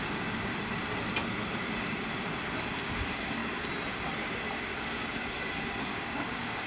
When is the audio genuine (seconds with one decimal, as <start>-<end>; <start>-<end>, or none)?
0.5-2.8; 3.4-5.8